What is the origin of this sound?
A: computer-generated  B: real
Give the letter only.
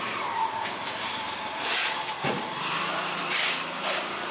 A